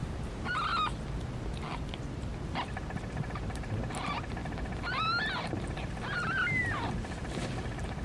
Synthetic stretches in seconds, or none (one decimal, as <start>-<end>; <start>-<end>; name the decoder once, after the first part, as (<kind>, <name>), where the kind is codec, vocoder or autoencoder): 0.0-0.5 (vocoder, BigVGAN v2)